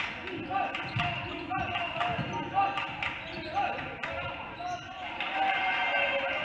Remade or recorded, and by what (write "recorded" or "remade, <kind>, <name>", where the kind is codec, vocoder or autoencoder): recorded